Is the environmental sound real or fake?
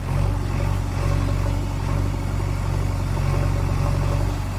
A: real